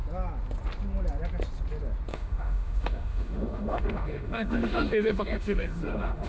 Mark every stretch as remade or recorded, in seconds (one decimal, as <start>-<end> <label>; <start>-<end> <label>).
0.0-2.1 recorded; 2.1-6.3 remade